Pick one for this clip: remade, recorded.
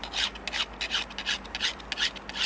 recorded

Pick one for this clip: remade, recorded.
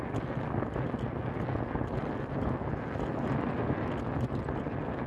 recorded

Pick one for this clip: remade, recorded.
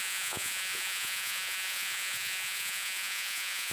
remade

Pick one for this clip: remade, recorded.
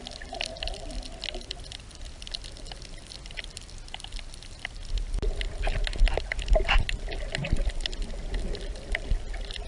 recorded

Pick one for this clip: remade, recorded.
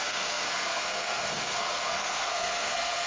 remade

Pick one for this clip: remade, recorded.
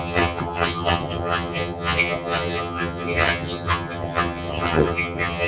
remade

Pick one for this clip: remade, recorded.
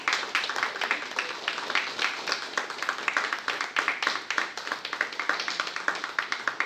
recorded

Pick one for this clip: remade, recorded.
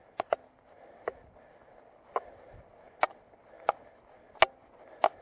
recorded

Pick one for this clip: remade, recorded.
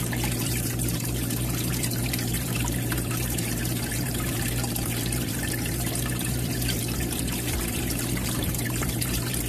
remade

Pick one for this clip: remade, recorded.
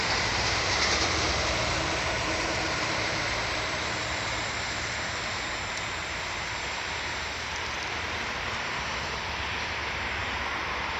remade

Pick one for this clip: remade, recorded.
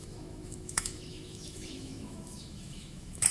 remade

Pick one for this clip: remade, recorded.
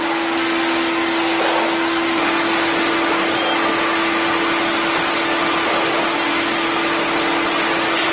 recorded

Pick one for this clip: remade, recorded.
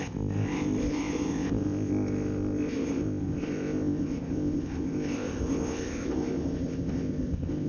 remade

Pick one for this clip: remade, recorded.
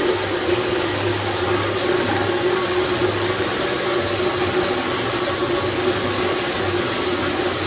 recorded